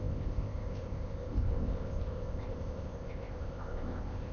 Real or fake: fake